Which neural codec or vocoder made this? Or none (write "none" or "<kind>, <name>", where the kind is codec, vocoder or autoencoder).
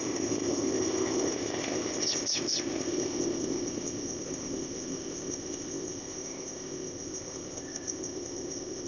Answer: codec, ZipCodec